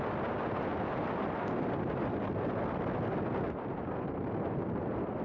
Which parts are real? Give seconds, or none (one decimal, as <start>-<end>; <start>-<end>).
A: 0.0-5.2